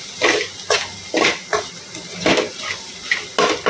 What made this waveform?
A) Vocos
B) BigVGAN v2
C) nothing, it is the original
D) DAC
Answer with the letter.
C